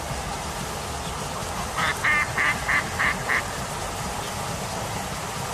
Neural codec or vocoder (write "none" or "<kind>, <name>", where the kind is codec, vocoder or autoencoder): none